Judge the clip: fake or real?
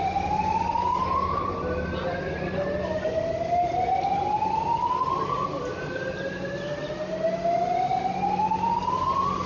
real